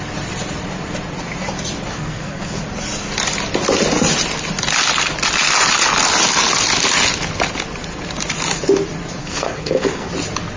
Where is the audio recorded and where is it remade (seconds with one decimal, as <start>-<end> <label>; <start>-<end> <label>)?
0.0-1.9 recorded; 1.9-2.6 remade; 2.6-9.2 recorded; 9.2-10.1 remade; 10.1-10.6 recorded